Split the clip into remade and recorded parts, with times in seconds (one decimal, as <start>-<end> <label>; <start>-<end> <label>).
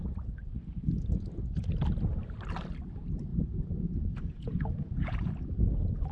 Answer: 0.0-3.3 recorded; 3.3-5.3 remade; 5.3-6.1 recorded